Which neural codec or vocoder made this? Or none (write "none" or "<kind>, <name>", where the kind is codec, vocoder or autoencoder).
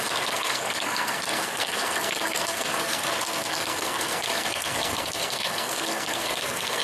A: codec, SNAC